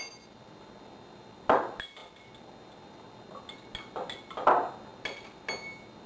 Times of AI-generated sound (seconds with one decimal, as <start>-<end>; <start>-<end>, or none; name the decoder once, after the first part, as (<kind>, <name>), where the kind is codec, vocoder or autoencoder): none